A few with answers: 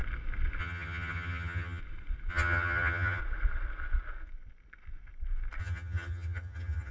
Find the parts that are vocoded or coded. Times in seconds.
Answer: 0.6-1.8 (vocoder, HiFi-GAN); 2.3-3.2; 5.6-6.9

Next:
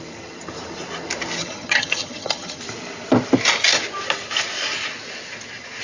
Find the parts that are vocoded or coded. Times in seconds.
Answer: 1.4-2.6 (vocoder, HiFi-GAN)

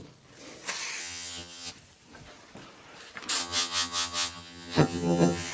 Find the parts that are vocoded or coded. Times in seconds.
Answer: 1.0-1.7 (vocoder, HiFi-GAN); 3.4-5.5

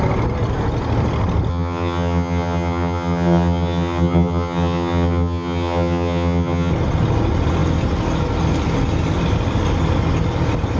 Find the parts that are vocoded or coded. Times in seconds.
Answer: 1.5-6.7 (vocoder, HiFi-GAN)

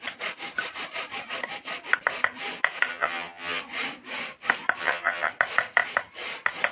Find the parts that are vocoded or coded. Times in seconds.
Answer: 2.9-3.6 (vocoder, HiFi-GAN); 4.8-5.3

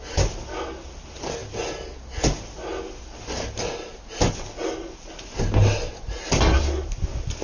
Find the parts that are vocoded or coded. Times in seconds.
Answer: none

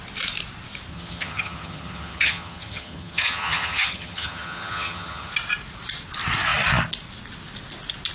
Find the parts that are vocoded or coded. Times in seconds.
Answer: 0.9-5.3 (vocoder, HiFi-GAN)

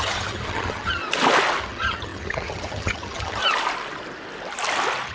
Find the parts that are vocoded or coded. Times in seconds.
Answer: 0.0-1.0 (vocoder, HiFi-GAN); 1.6-3.4